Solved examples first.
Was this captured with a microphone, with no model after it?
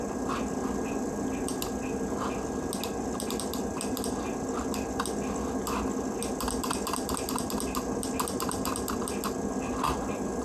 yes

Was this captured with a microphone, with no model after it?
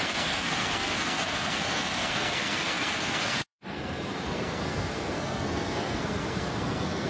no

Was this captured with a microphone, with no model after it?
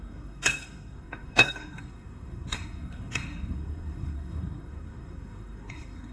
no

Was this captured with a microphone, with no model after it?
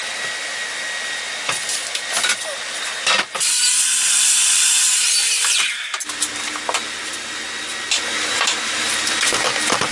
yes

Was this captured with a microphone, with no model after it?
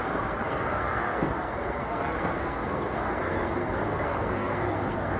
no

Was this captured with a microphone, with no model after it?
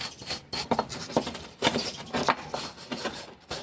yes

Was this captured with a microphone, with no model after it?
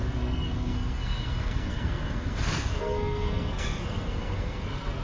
no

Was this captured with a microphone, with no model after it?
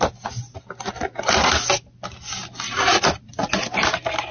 yes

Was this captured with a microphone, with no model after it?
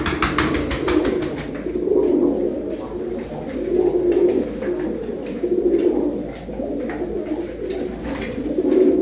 yes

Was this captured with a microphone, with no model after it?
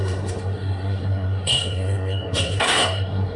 no